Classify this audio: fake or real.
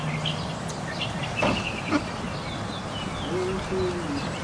real